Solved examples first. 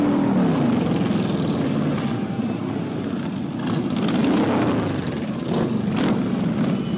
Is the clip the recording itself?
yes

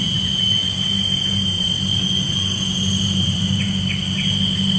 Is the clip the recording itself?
yes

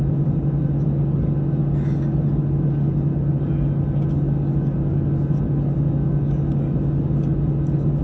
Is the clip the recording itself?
yes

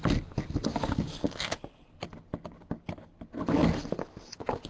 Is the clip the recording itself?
yes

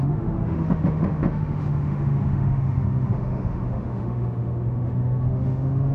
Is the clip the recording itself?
no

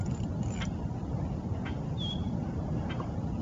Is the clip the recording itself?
yes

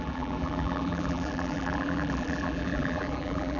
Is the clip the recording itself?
no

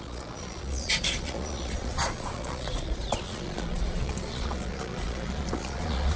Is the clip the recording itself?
no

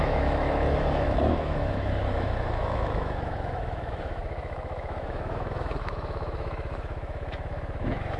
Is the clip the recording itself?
no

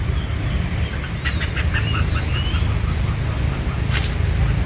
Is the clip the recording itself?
yes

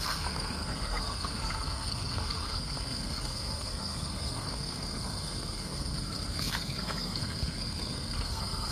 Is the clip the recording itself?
no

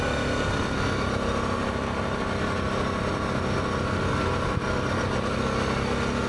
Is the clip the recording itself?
yes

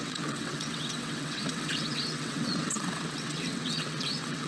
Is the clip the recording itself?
no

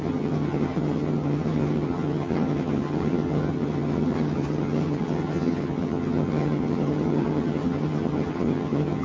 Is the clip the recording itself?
no